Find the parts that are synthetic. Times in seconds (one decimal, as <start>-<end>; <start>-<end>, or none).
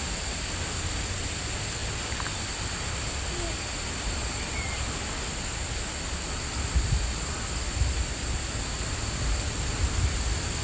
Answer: none